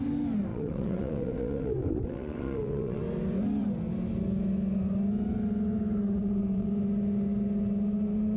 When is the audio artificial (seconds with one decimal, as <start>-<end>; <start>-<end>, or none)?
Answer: 0.5-3.0; 6.2-6.7